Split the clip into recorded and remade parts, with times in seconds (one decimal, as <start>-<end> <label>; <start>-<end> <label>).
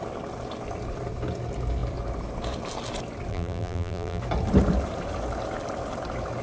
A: 0.0-3.3 recorded; 3.3-4.2 remade; 4.2-6.4 recorded